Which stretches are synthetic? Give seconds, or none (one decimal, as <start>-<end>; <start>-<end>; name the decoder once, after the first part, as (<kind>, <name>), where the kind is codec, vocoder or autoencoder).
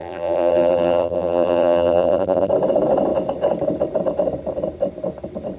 0.0-2.5 (vocoder, BigVGAN v2)